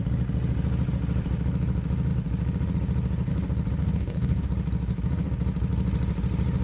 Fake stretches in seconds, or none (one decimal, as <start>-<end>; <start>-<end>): 3.8-4.5